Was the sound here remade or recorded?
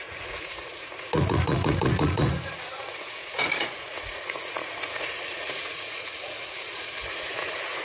remade